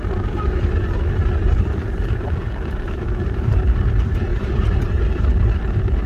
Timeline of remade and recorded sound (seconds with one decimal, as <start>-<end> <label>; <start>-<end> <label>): 0.0-4.3 recorded; 4.3-5.2 remade; 5.2-6.1 recorded